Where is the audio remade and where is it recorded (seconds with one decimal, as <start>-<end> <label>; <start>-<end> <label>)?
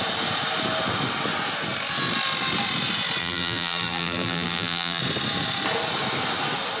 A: 0.0-3.2 recorded; 3.2-5.0 remade; 5.0-6.8 recorded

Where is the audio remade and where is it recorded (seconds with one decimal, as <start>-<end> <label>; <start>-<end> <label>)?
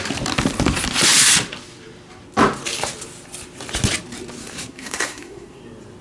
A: 0.0-4.4 recorded; 4.4-5.6 remade; 5.6-6.0 recorded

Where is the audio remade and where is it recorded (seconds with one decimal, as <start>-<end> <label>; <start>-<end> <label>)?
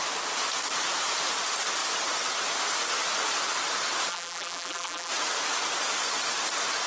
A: 0.0-4.1 recorded; 4.1-5.1 remade; 5.1-6.9 recorded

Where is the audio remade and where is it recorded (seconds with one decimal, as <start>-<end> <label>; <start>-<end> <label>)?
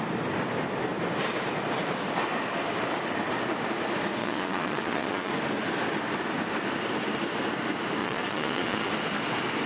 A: 0.0-4.2 recorded; 4.2-5.3 remade; 5.3-8.0 recorded; 8.0-8.9 remade; 8.9-9.7 recorded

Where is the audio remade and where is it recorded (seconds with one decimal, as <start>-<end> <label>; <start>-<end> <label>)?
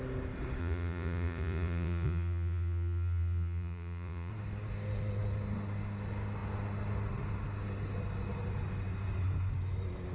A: 0.0-0.6 recorded; 0.6-4.3 remade; 4.3-10.1 recorded